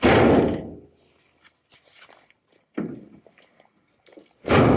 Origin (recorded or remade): recorded